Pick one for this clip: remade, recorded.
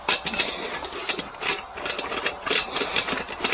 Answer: recorded